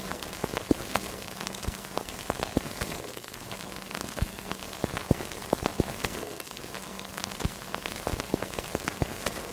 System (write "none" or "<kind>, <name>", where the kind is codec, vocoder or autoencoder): codec, SNAC